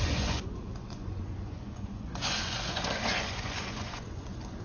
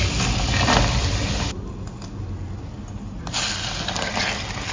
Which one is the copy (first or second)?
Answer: first